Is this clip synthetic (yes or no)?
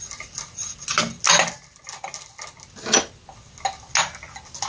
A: no